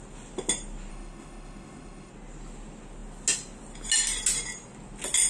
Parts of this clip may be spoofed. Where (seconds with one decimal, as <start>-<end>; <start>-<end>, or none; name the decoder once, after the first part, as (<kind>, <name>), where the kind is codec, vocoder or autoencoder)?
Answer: 0.9-2.1 (autoencoder, DAC-VAE)